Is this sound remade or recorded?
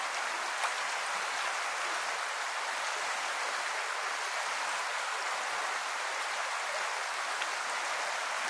recorded